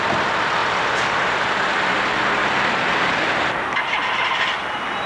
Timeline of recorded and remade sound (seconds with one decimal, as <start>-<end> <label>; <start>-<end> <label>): 0.0-5.1 recorded

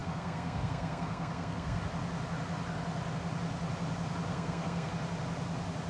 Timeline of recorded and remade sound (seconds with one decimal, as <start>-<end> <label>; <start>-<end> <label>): 0.0-1.8 remade; 1.8-4.3 recorded; 4.3-4.9 remade; 4.9-5.9 recorded